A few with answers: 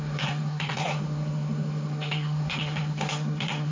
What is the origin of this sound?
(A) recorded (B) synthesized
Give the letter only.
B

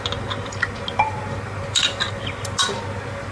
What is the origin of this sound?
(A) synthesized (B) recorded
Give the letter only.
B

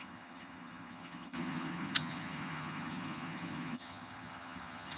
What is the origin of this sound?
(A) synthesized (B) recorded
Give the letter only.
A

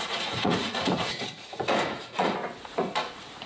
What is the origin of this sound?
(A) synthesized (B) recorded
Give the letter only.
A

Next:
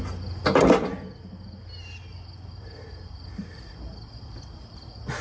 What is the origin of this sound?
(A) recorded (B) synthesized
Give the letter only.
A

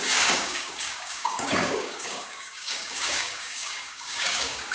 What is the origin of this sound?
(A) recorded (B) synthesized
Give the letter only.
B